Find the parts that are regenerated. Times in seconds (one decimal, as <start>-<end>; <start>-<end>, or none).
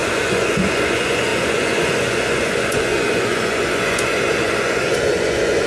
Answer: 0.0-5.7